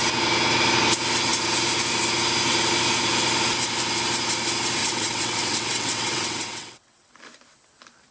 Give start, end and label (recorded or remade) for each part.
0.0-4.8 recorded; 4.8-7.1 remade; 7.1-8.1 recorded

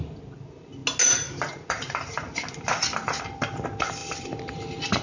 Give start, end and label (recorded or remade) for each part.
0.0-5.0 recorded

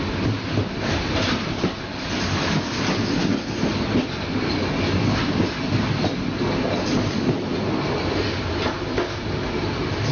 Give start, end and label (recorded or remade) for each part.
0.0-10.1 recorded

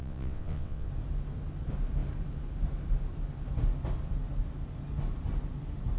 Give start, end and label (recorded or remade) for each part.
0.0-0.9 remade; 0.9-6.0 recorded

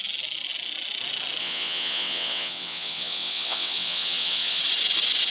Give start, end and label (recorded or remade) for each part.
0.0-1.4 recorded; 1.4-4.6 remade; 4.6-5.3 recorded